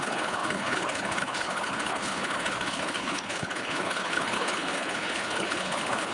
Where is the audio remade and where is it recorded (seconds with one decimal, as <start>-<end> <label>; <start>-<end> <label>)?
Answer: 0.0-6.1 remade